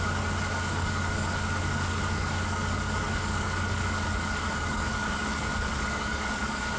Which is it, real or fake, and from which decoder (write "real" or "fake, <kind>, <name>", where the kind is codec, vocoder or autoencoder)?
fake, codec, DAC